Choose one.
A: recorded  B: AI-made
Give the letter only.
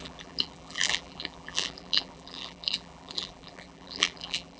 B